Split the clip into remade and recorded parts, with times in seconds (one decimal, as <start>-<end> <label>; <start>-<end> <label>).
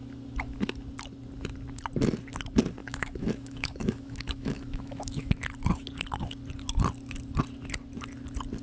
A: 0.0-2.8 recorded; 2.8-5.3 remade; 5.3-8.6 recorded